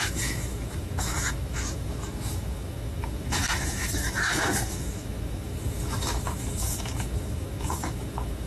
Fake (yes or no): yes